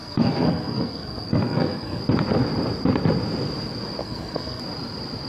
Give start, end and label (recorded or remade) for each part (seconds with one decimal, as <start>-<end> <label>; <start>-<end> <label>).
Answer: 0.0-2.0 remade; 2.0-4.0 recorded; 4.0-4.6 remade; 4.6-5.3 recorded